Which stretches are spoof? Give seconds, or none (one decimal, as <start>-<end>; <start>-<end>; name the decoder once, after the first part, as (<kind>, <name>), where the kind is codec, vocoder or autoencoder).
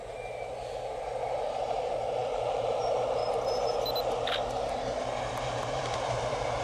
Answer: 0.0-3.2 (vocoder, BigVGAN v2); 5.2-6.6